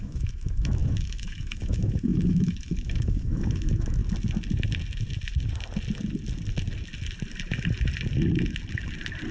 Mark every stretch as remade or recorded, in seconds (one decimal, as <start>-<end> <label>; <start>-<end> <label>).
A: 0.0-4.0 remade; 4.0-9.3 recorded